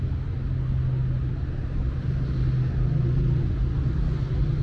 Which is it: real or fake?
real